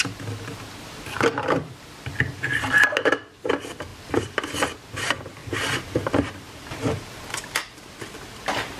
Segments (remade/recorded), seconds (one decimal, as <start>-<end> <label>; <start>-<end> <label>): 0.0-3.9 recorded; 3.9-4.5 remade; 4.5-5.4 recorded; 5.4-7.8 remade; 7.8-8.8 recorded